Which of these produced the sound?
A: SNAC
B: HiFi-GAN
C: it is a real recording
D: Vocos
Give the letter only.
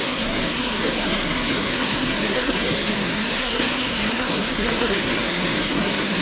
A